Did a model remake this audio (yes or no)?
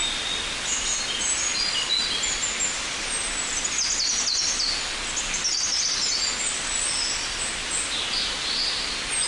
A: no